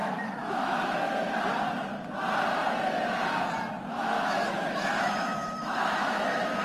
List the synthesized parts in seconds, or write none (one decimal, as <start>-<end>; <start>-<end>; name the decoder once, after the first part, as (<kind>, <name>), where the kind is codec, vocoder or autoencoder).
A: 0.0-1.3 (autoencoder, DAC-VAE); 3.9-6.6